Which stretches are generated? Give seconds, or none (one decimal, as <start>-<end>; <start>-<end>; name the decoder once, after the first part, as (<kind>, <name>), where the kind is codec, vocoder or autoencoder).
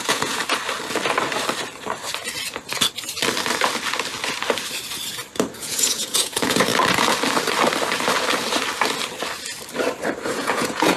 0.0-0.4 (vocoder, Vocos); 5.5-6.7; 10.2-11.0